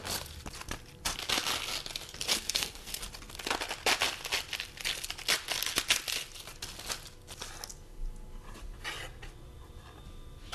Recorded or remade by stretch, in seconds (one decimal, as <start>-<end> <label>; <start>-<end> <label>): 0.0-2.3 recorded; 2.3-3.0 remade; 3.0-10.5 recorded